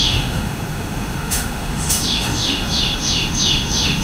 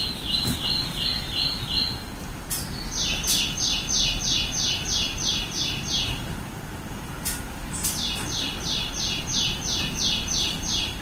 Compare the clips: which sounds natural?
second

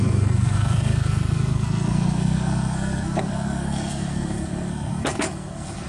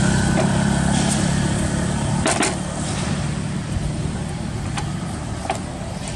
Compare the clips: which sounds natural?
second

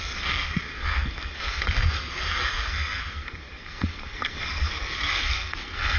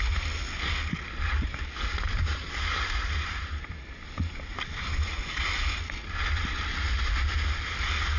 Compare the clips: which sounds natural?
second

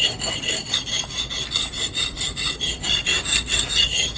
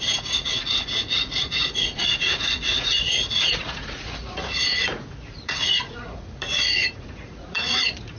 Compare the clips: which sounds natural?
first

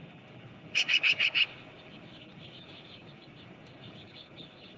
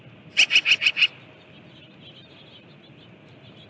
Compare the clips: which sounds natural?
second